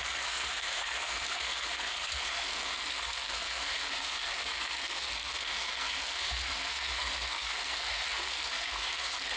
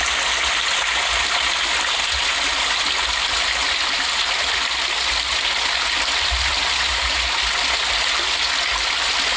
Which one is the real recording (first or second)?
second